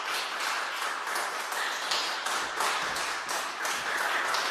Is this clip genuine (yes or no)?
yes